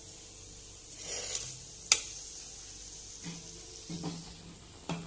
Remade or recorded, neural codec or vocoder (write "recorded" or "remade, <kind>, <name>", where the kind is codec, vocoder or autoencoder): recorded